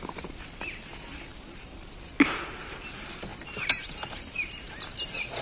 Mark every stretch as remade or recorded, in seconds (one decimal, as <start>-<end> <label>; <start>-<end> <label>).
0.0-1.3 recorded; 1.3-1.9 remade; 1.9-3.3 recorded; 3.3-4.8 remade; 4.8-5.4 recorded